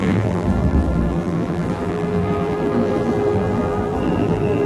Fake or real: fake